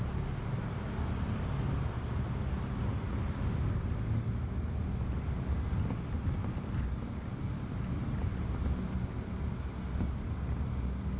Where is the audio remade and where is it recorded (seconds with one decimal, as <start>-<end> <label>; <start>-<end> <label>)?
0.0-11.2 recorded